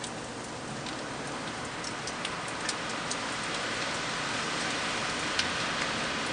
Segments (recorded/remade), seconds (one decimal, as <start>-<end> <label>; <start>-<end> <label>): 0.0-6.3 recorded